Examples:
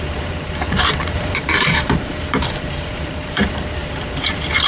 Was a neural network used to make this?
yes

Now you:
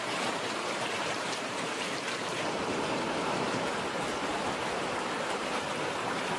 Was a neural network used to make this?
yes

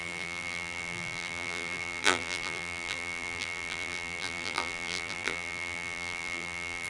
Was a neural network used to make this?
yes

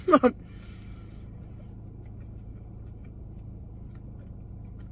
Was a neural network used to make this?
yes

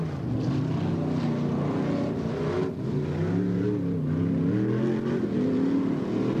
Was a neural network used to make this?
no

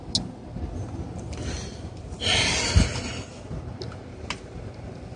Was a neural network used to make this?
no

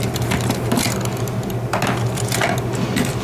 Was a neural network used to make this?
no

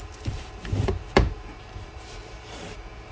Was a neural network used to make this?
yes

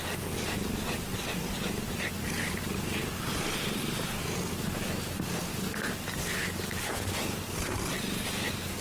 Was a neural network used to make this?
no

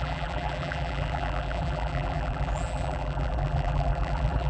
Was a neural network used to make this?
yes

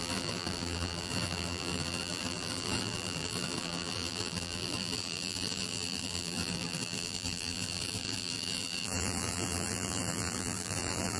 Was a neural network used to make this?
yes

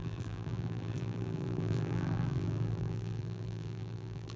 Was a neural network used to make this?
yes